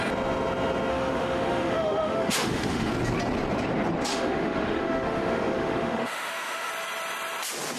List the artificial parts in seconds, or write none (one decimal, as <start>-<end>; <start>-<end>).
0.9-2.9; 4.1-6.7